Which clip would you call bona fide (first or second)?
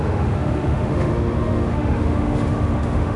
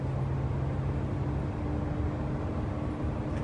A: second